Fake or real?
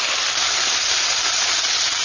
real